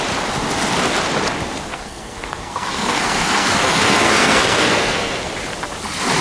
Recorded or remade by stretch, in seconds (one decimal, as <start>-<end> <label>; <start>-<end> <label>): 0.0-1.7 recorded; 1.7-5.3 remade; 5.3-6.2 recorded